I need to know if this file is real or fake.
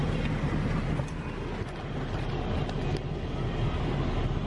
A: real